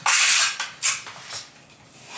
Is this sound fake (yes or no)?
no